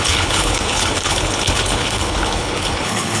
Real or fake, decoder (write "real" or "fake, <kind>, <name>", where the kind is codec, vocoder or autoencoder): fake, codec, HILCodec